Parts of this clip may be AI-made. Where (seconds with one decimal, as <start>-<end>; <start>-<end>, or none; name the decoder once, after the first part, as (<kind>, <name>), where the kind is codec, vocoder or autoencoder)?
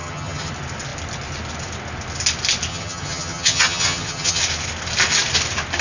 0.0-0.5 (vocoder, HiFi-GAN); 2.7-4.4